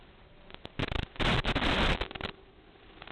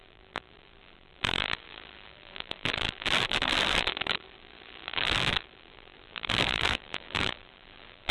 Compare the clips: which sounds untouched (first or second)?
first